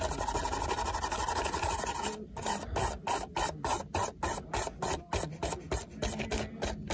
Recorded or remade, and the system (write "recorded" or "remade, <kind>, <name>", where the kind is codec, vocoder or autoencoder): recorded